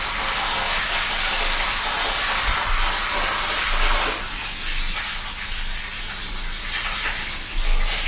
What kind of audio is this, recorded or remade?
recorded